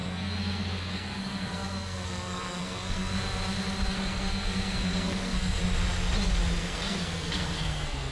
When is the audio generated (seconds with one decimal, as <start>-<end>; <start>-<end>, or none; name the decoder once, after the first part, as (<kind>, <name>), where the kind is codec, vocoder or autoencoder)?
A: 0.0-3.1 (codec, SNAC); 3.9-5.6; 6.6-8.1